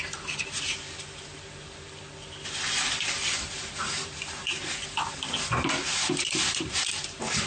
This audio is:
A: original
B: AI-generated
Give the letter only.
B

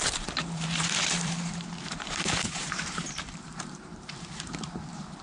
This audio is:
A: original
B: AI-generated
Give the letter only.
B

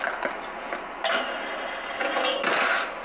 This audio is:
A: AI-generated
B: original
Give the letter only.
B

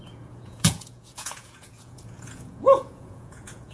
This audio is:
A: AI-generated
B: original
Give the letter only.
A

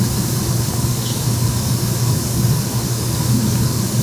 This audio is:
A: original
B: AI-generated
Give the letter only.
B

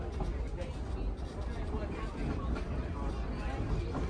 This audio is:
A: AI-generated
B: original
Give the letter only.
B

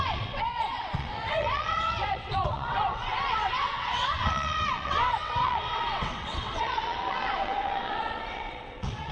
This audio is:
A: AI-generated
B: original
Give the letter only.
A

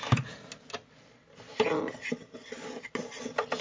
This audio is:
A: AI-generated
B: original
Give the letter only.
B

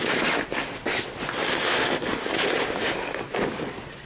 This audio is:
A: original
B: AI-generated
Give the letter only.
A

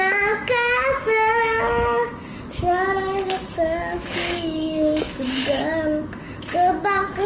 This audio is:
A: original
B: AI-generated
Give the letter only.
B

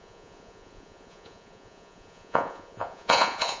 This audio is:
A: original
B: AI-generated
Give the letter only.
B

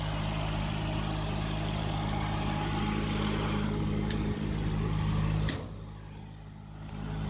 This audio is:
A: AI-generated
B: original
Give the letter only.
B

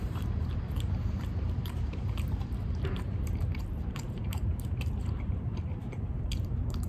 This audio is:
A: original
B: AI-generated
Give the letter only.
B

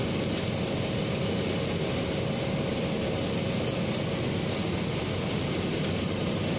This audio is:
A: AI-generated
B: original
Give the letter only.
B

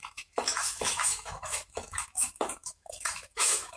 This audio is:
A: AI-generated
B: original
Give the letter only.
A